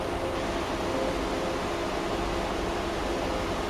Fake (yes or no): no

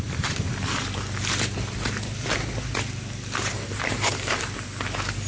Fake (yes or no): no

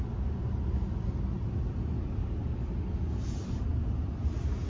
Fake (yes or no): no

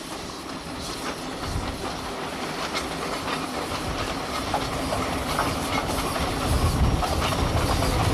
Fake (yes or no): no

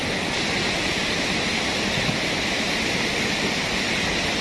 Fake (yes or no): no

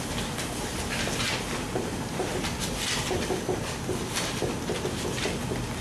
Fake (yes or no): no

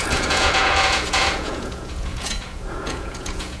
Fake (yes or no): yes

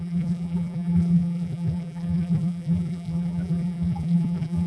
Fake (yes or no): yes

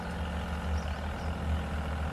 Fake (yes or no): no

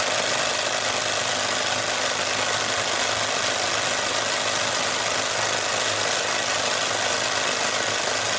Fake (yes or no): no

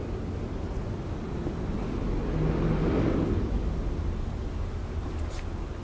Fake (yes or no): no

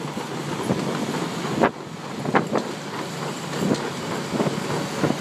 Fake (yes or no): no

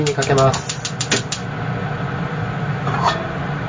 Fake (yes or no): no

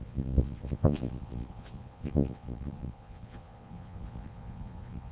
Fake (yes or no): yes